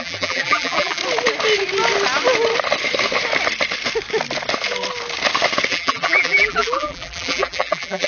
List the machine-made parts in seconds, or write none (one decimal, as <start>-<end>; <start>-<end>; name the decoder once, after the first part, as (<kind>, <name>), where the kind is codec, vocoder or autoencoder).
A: 0.0-1.0 (vocoder, BigVGAN v2); 5.7-8.1